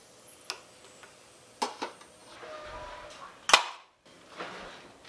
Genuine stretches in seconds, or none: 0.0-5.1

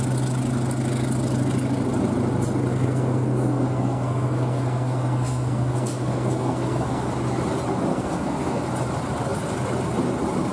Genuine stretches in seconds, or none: 0.0-2.7; 7.1-7.9; 8.6-10.5

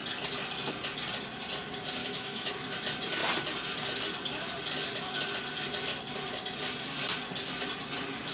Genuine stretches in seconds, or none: 0.0-2.0; 2.5-8.3

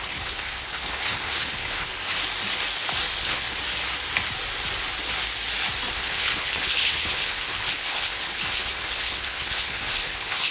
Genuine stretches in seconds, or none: 1.9-3.2; 3.6-5.9